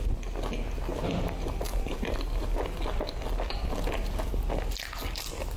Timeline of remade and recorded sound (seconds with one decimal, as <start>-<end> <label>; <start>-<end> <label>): 0.0-0.9 recorded; 0.9-4.3 remade; 4.3-5.6 recorded